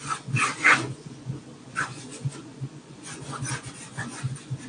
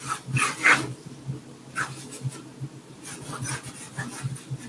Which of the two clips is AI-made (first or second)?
first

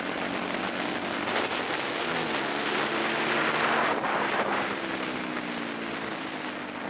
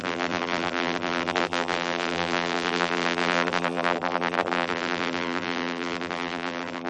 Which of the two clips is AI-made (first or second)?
second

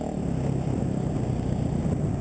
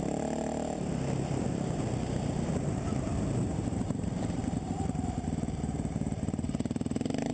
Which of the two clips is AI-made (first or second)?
second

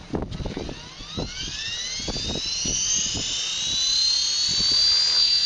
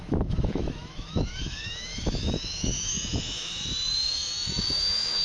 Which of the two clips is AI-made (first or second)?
second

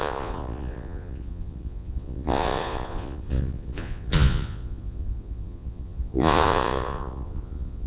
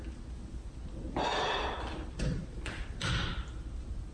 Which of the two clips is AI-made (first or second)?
first